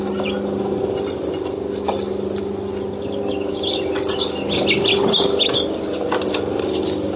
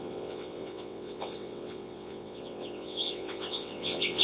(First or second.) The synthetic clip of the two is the second